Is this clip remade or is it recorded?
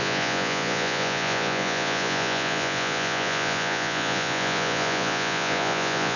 remade